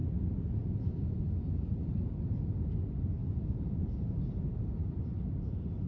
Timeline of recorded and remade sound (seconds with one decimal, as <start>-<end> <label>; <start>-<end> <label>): 0.0-3.2 recorded; 3.2-4.2 remade; 4.2-5.9 recorded